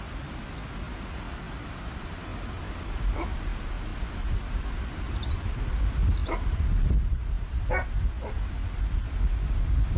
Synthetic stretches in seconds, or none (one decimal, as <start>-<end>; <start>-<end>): none